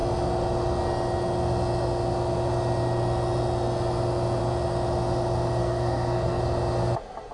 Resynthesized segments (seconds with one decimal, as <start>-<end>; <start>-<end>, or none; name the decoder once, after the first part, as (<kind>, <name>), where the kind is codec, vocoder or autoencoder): 5.6-6.4 (codec, SNAC)